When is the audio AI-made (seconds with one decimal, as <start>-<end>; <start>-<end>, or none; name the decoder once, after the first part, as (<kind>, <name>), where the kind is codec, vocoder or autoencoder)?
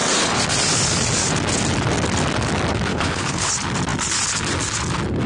2.9-3.5 (codec, HILCodec)